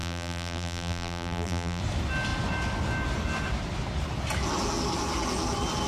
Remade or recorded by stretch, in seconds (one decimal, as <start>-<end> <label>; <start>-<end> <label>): 0.0-1.8 remade; 1.8-5.9 recorded